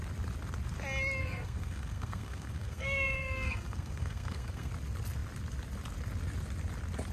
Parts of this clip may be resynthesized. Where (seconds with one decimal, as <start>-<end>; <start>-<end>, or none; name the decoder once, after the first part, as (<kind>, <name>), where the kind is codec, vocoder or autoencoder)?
1.2-4.7 (codec, SNAC)